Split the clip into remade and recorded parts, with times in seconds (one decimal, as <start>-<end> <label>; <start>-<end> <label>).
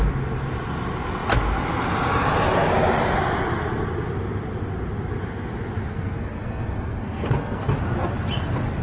0.0-5.9 recorded; 5.9-7.7 remade; 7.7-8.8 recorded